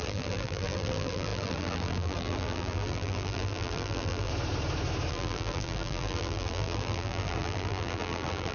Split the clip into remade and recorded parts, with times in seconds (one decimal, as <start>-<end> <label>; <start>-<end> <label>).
0.0-4.3 remade; 4.3-5.1 recorded; 5.1-8.5 remade